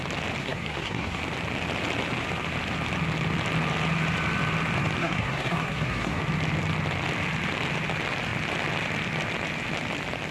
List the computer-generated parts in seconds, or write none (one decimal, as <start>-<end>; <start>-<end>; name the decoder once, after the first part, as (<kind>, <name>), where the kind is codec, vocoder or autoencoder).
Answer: 0.4-1.2 (codec, SNAC); 5.0-6.2